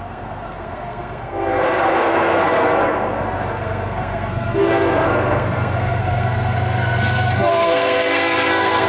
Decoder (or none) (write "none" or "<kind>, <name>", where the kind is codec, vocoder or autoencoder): codec, SNAC